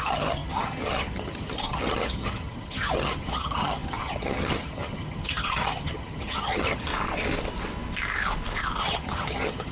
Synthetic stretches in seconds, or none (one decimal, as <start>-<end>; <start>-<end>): 0.0-6.9; 8.8-9.7